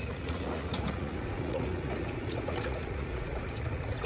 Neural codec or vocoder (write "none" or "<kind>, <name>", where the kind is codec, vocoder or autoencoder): vocoder, Vocos